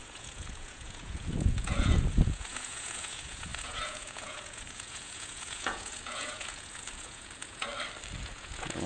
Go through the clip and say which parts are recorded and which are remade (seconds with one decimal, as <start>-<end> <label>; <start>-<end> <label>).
0.0-7.7 remade; 7.7-8.2 recorded; 8.2-8.9 remade

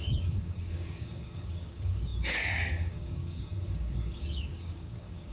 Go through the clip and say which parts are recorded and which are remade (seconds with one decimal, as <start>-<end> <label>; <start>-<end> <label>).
0.0-5.3 remade